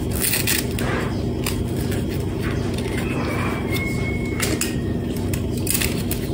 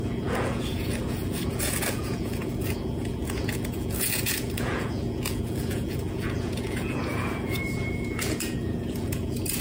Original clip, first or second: first